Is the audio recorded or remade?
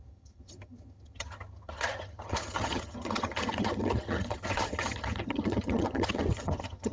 remade